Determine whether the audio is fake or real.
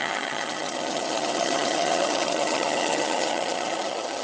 fake